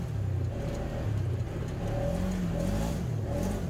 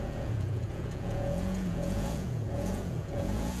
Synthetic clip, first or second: second